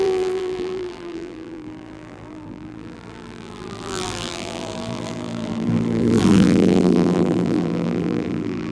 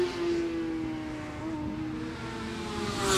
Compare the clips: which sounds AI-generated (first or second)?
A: first